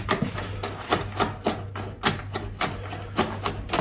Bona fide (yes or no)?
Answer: yes